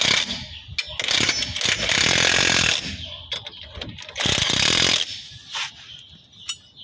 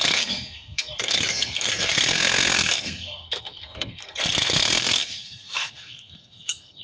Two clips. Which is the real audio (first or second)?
first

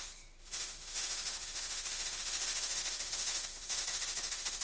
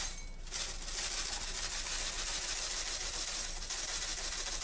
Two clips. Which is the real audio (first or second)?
second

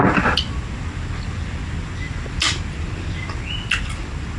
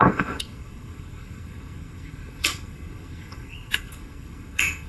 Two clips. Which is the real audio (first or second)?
first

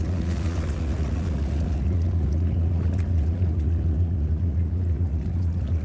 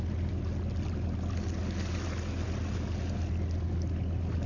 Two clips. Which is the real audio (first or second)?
second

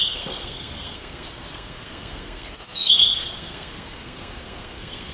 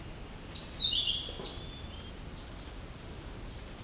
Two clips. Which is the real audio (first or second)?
second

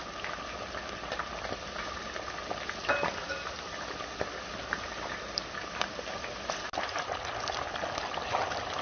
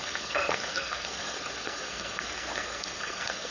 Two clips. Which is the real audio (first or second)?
first